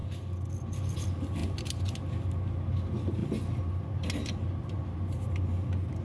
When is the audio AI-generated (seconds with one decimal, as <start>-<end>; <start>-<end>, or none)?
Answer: none